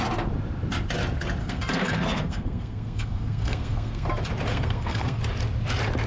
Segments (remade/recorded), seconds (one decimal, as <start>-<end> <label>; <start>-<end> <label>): 0.0-1.4 recorded; 1.4-4.1 remade; 4.1-4.5 recorded; 4.5-5.2 remade; 5.2-6.1 recorded